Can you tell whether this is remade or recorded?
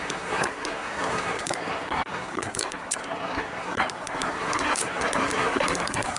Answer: remade